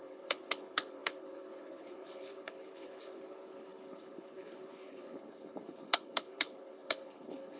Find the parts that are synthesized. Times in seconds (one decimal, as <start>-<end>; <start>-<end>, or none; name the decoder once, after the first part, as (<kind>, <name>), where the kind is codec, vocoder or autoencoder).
0.0-7.6 (codec, HILCodec)